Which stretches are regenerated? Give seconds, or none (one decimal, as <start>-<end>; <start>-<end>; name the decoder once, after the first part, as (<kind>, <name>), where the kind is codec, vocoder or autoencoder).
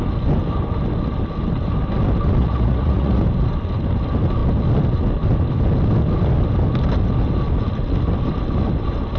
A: 2.4-3.2 (vocoder, Vocos)